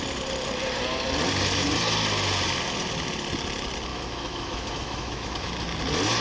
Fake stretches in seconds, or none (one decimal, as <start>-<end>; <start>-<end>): 3.9-5.5